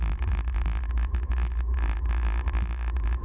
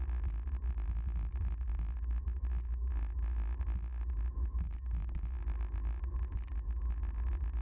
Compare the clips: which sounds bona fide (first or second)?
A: second